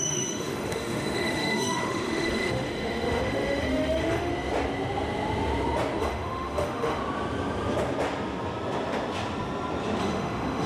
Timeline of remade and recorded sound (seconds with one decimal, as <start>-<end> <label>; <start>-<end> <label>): 0.0-4.3 remade; 4.3-6.0 recorded; 6.0-7.0 remade; 7.0-10.0 recorded; 10.0-10.7 remade